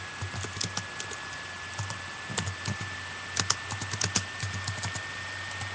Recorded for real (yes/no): yes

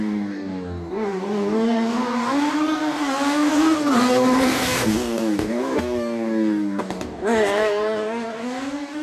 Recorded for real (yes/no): no